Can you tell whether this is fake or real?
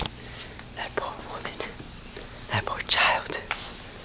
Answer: real